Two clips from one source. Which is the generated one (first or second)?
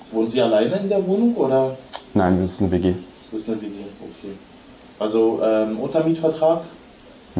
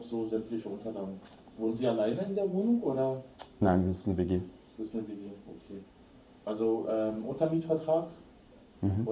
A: second